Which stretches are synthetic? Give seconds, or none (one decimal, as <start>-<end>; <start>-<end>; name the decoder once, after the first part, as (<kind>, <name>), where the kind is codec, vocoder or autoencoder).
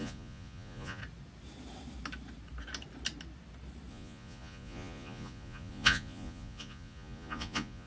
0.0-1.0 (vocoder, Vocos); 3.9-7.9